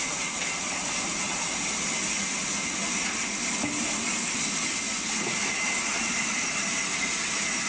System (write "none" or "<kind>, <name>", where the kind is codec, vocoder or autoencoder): none